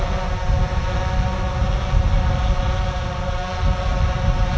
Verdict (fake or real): real